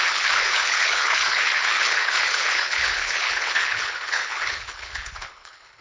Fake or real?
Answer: fake